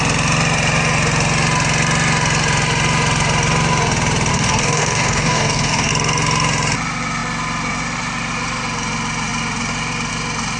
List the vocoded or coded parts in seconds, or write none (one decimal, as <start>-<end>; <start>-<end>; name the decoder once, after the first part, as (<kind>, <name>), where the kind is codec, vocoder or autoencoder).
4.3-5.9 (codec, DAC)